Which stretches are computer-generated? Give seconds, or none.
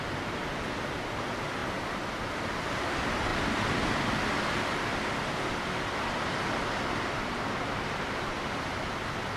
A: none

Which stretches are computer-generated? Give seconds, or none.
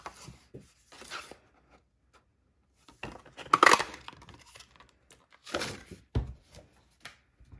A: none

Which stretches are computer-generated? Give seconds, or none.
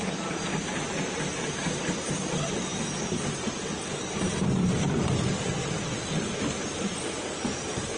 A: 0.0-8.0 (vocoder, BigVGAN v2)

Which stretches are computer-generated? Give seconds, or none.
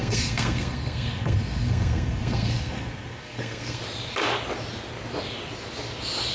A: 0.0-3.8 (codec, SNAC)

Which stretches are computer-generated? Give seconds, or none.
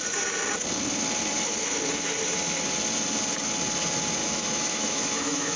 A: 4.2-5.6 (autoencoder, DAC-VAE)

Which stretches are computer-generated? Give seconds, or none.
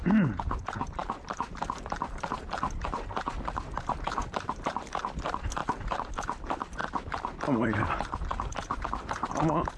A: 1.0-2.7 (vocoder, BigVGAN v2); 4.2-4.8; 5.6-6.1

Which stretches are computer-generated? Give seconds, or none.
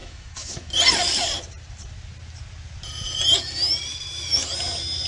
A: 0.0-0.7 (autoencoder, DAC-VAE); 3.9-4.5